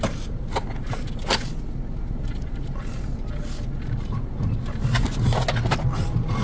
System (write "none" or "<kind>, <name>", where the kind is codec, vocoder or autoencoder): none